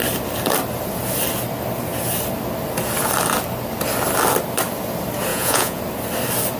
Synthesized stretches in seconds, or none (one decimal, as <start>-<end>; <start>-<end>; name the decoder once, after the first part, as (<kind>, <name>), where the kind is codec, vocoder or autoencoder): 5.3-5.8 (vocoder, Vocos)

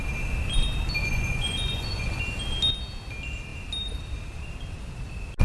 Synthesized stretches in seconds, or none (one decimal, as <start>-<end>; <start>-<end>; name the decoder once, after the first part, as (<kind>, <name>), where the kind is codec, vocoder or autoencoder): 1.0-2.2 (vocoder, Vocos)

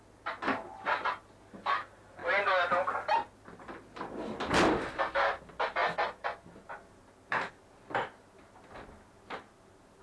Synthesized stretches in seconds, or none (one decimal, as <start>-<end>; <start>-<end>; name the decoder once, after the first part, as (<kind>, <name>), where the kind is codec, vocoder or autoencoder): none

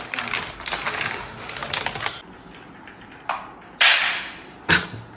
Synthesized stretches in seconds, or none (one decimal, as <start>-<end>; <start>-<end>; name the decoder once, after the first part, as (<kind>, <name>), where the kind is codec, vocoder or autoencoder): none

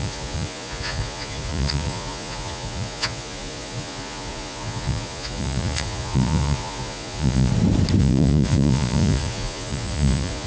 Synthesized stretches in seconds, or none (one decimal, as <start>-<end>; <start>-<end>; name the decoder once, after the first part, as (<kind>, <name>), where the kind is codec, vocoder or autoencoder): 0.0-7.5 (vocoder, Vocos); 8.0-10.5

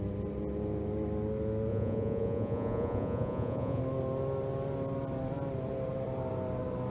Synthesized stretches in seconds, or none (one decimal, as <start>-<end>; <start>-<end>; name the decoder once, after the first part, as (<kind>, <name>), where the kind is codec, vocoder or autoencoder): 1.7-3.8 (vocoder, Vocos)